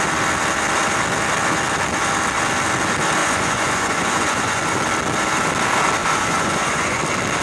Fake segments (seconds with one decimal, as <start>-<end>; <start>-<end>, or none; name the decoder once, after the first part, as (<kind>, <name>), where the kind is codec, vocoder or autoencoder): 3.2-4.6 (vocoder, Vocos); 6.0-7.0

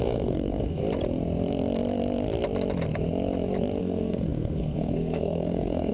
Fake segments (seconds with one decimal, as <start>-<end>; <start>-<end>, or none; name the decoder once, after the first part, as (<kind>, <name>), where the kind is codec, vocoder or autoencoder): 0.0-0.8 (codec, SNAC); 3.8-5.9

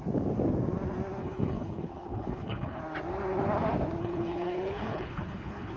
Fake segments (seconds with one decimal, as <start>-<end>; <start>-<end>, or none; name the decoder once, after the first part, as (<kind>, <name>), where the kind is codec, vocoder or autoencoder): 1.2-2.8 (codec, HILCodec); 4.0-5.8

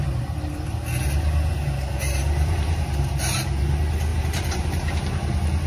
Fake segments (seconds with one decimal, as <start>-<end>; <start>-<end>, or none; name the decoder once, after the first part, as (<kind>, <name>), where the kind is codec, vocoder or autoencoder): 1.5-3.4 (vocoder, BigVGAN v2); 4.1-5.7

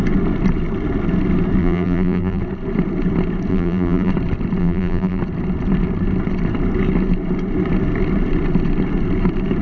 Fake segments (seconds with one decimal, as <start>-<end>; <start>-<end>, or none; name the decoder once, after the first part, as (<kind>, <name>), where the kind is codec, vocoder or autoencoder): 1.6-2.4 (vocoder, BigVGAN v2); 3.5-4.1; 4.6-5.2